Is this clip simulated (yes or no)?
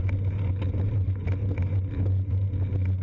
no